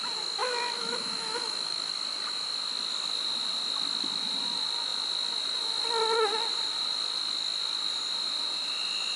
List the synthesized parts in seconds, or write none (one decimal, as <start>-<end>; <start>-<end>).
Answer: 0.4-1.9